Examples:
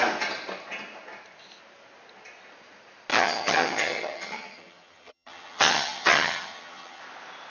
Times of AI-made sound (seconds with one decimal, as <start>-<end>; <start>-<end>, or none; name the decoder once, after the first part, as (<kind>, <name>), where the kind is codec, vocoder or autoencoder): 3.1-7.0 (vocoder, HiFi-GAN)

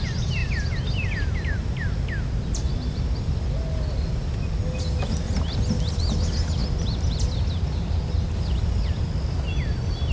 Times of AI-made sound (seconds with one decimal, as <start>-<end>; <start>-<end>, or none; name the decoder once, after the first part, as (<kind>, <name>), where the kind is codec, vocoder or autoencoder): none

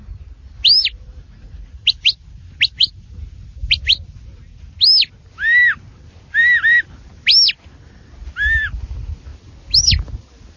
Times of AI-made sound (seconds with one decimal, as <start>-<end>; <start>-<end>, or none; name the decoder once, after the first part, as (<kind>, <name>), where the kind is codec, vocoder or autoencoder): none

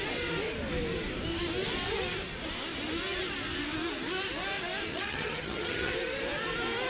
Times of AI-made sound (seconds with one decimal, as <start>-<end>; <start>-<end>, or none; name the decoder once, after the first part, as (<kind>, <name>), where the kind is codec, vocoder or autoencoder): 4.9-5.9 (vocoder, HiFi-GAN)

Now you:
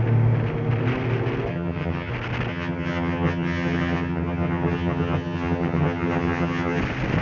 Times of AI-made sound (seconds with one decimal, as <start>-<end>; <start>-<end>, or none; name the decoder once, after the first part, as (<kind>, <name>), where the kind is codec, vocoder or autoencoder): 1.5-2.1 (vocoder, HiFi-GAN); 2.5-6.8